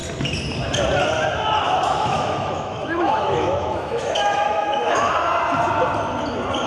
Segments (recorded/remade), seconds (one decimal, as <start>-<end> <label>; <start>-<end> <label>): 0.0-1.6 recorded; 1.6-5.1 remade; 5.1-6.7 recorded